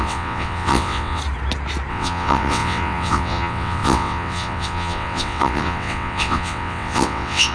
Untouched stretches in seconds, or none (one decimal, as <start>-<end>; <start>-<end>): 1.2-1.9